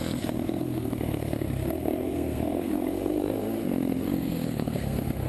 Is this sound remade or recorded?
remade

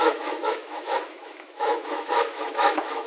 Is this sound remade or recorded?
remade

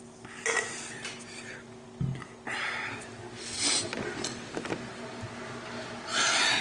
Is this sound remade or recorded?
recorded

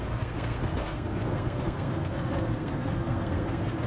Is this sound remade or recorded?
remade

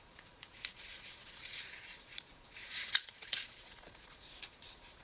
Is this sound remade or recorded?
remade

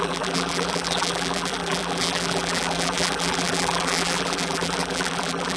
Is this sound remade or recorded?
remade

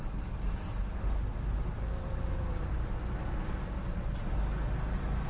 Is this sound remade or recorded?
recorded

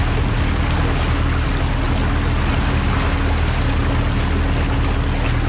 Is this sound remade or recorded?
recorded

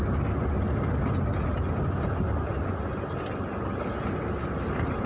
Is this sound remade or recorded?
recorded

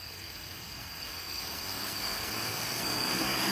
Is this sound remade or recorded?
remade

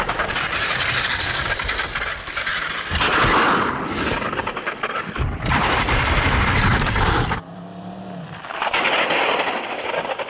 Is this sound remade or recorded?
recorded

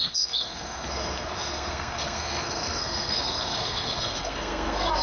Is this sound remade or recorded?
remade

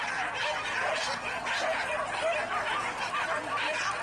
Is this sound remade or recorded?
recorded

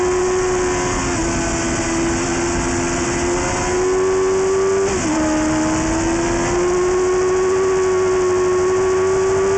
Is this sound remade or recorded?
recorded